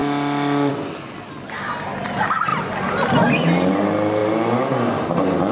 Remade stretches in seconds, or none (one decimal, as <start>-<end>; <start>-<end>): none